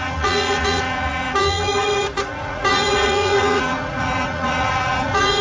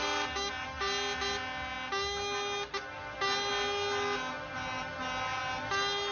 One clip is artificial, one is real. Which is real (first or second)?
second